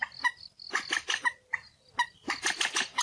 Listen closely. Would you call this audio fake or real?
real